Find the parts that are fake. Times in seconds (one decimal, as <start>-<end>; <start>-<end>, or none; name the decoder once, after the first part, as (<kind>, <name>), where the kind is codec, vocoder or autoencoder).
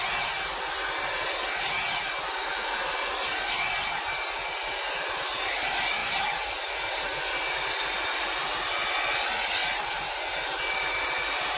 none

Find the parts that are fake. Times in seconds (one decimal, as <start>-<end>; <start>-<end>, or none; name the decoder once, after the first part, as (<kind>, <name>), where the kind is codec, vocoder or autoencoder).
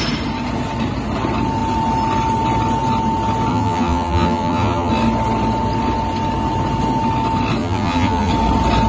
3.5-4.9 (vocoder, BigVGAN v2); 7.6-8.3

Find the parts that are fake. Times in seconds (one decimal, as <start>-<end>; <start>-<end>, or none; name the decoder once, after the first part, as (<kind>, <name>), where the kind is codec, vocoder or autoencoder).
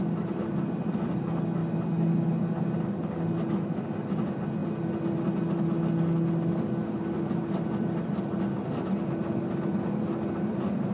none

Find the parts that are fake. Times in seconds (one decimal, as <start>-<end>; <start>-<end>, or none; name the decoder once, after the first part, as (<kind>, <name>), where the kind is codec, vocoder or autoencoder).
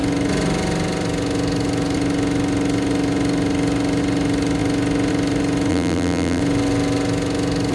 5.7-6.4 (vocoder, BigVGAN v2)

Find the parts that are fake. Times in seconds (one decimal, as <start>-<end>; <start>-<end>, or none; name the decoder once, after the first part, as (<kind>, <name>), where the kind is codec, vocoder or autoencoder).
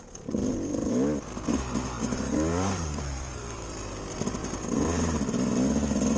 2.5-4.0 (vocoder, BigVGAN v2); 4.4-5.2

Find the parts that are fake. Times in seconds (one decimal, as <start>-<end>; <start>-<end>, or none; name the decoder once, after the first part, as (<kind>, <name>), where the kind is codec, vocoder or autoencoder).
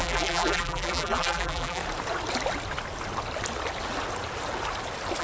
0.0-1.8 (vocoder, BigVGAN v2)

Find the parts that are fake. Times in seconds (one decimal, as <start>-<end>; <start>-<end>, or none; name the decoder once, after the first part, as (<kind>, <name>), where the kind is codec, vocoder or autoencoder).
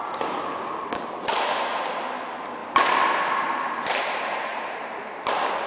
2.6-3.2 (vocoder, BigVGAN v2); 4.5-5.2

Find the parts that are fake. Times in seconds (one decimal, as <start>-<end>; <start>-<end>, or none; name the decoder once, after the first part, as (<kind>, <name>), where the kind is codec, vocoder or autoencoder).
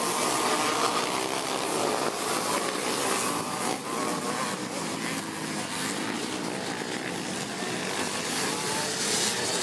none